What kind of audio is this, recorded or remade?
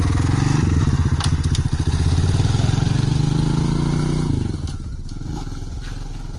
recorded